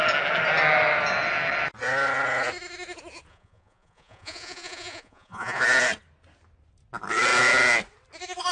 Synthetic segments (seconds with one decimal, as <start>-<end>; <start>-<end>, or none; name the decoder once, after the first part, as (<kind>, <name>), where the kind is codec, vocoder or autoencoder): 3.3-5.6 (vocoder, Vocos)